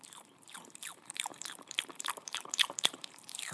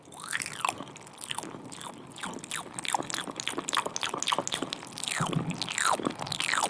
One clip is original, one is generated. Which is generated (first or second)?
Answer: first